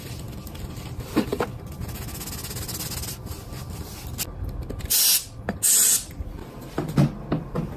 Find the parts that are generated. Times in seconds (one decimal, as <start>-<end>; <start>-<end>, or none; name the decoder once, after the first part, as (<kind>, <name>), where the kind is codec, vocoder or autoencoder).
none